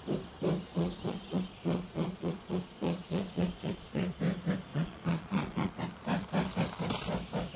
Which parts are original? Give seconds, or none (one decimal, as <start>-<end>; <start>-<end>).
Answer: 0.0-0.7; 4.2-4.7; 5.7-7.6

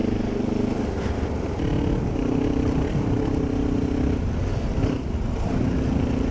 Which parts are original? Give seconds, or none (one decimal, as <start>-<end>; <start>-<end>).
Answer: 0.0-6.3

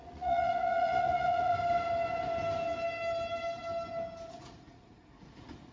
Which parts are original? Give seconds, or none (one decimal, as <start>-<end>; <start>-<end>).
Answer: 1.5-4.3

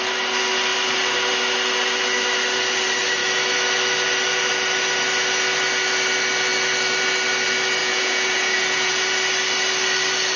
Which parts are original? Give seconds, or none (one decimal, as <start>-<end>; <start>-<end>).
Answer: 0.0-7.8; 8.9-10.4

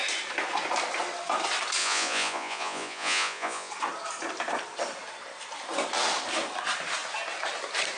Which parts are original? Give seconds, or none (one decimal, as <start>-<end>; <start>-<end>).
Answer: 0.0-1.8; 3.7-8.0

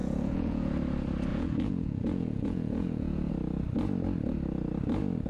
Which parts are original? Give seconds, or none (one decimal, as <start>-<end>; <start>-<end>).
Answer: 0.7-1.3; 3.3-5.3

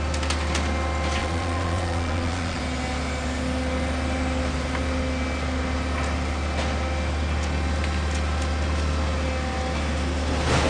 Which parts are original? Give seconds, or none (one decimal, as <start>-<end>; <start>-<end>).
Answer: 0.0-1.2; 2.6-10.7

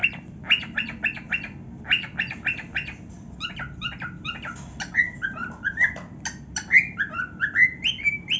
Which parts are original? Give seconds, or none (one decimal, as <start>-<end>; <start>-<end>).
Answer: 0.0-8.4